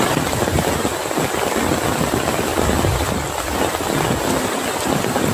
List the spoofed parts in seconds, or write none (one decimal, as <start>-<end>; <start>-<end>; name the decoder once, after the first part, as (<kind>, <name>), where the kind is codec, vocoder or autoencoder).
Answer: none